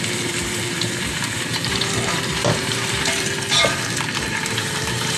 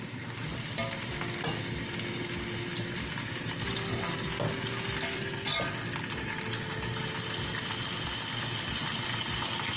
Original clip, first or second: second